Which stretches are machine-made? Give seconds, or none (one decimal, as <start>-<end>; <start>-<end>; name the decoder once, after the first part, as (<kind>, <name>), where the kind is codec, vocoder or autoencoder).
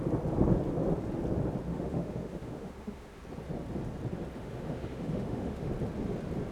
1.7-3.2 (autoencoder, DAC-VAE); 4.4-5.7